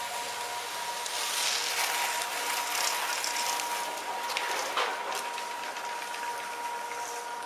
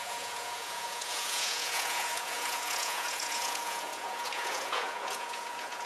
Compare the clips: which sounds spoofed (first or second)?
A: second